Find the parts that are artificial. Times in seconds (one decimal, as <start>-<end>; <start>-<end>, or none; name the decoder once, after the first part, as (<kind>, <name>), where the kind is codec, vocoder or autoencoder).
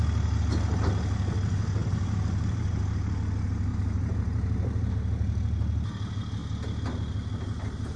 1.8-2.8 (vocoder, BigVGAN v2); 3.7-4.9